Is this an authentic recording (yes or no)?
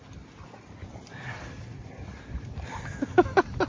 yes